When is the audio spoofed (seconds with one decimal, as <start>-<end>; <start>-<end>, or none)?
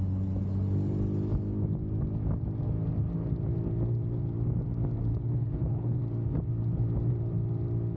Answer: 5.1-6.0